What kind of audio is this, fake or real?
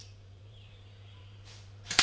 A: fake